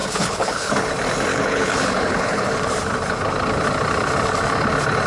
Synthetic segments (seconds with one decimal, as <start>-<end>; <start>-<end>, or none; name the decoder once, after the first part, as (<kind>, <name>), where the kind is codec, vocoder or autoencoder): 0.0-0.7 (codec, HILCodec); 1.3-2.5